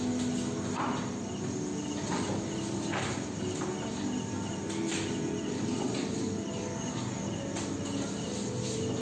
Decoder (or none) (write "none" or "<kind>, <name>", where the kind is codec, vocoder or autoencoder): none